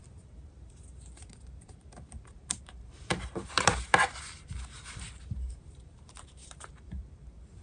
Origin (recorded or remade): remade